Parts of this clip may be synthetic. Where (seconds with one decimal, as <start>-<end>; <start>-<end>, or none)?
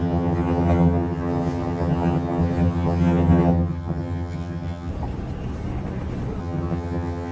0.0-4.9; 6.4-7.3